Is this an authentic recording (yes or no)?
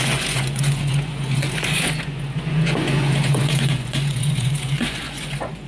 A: no